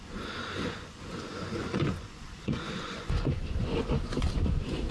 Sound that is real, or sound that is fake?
fake